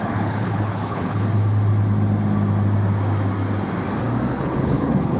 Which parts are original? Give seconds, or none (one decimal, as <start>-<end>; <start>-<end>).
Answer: 1.2-4.3